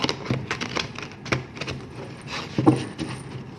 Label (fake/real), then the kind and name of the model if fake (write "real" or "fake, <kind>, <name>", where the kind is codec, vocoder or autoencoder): real